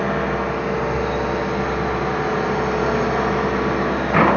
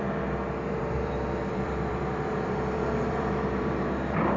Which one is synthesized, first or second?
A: second